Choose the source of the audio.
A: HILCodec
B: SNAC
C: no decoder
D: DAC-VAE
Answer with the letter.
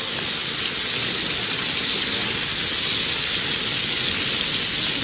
C